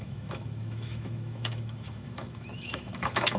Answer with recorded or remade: remade